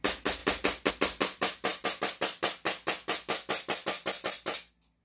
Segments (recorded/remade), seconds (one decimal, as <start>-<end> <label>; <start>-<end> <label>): 0.0-5.0 recorded